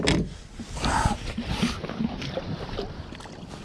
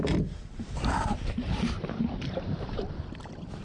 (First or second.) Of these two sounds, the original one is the first